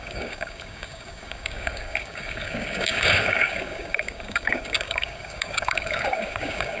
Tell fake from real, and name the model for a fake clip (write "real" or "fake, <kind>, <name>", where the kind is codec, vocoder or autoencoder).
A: fake, codec, DAC